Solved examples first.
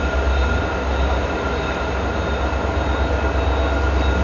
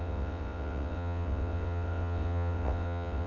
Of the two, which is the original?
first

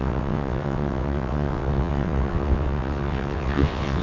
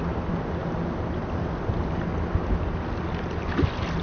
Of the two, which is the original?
second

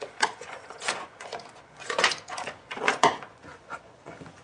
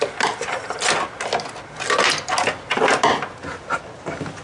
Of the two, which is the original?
second